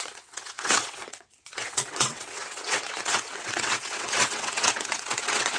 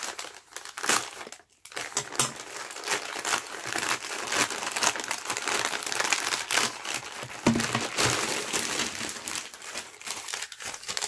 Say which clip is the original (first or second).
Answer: second